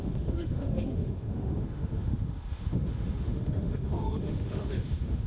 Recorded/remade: remade